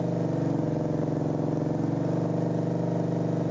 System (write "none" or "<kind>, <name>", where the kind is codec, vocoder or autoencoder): none